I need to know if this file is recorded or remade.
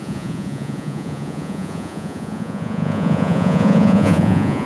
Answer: remade